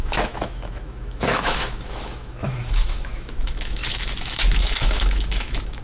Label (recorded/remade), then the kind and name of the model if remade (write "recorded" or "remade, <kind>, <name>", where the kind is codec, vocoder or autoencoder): remade, autoencoder, DAC-VAE